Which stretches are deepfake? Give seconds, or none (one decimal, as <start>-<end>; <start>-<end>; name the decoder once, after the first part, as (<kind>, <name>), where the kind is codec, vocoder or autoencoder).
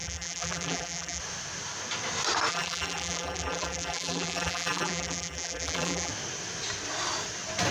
0.0-1.2 (vocoder, BigVGAN v2); 2.5-6.1